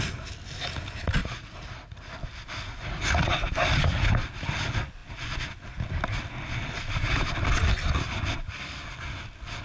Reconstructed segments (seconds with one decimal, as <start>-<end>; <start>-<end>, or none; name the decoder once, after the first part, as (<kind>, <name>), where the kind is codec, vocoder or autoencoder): 1.2-2.1 (vocoder, Vocos); 2.8-3.5